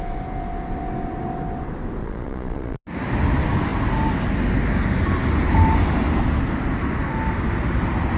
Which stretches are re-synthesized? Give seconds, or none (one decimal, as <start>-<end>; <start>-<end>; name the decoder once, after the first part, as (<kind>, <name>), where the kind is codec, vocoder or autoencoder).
2.0-2.8 (vocoder, Vocos)